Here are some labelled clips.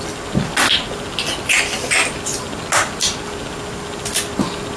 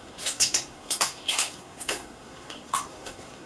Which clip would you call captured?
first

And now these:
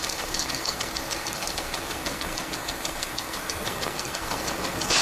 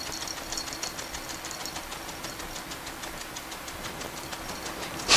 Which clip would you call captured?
second